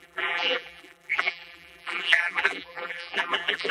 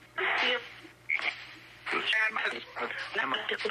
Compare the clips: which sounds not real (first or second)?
first